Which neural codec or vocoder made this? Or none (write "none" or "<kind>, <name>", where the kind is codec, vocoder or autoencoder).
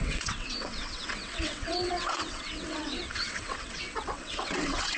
vocoder, WaveNeXt